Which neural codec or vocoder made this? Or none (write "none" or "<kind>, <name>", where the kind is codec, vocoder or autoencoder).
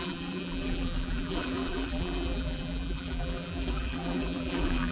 vocoder, BigVGAN v2